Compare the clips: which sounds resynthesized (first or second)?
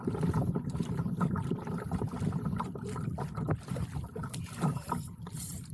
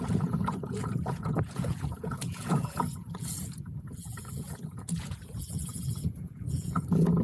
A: second